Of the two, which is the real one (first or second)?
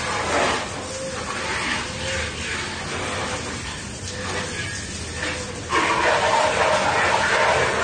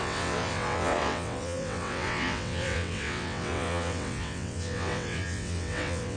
first